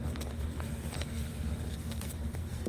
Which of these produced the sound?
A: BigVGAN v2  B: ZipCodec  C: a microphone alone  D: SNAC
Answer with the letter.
D